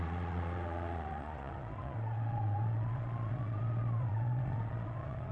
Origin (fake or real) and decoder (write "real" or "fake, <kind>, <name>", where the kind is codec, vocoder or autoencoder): fake, vocoder, Vocos